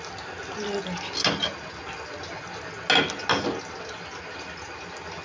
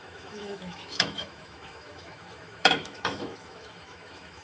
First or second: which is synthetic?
second